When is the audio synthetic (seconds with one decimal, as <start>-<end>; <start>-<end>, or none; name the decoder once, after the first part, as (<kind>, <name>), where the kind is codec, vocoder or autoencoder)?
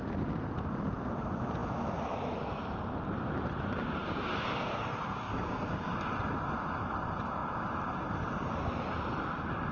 4.0-5.9 (codec, DAC)